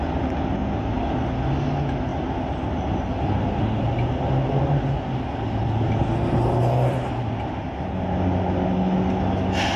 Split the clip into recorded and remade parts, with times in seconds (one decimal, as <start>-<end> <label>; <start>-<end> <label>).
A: 0.0-9.8 recorded